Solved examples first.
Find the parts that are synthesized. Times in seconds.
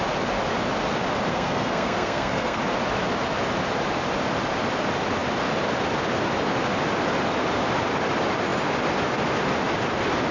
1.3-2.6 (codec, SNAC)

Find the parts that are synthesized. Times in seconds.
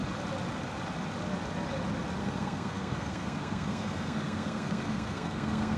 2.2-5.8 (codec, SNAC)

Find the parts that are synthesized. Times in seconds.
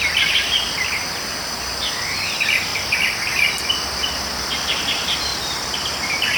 5.3-5.8 (vocoder, BigVGAN v2)